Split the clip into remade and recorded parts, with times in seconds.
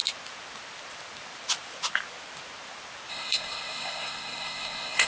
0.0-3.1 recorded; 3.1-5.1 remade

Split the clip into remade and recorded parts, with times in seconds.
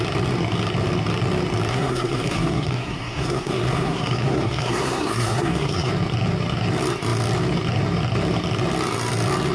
0.0-1.7 recorded; 1.7-5.9 remade; 5.9-9.5 recorded